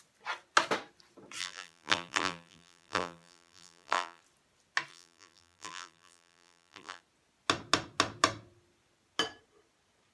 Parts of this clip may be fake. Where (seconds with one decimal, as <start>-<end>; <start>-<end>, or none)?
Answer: 1.4-4.2; 4.9-7.0